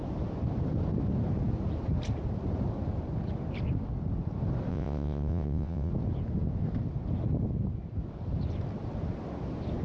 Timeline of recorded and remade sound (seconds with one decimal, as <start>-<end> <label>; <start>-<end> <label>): 0.0-4.7 recorded; 4.7-5.9 remade; 5.9-9.8 recorded